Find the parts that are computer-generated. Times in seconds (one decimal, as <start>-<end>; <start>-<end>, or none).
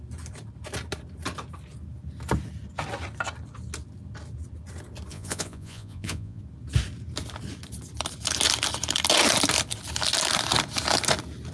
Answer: 5.1-6.4